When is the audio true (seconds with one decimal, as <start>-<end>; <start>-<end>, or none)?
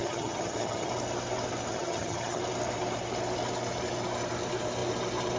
0.9-1.7; 2.4-5.4